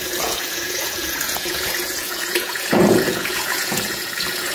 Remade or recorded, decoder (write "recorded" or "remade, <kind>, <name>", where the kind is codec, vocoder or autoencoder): remade, vocoder, Vocos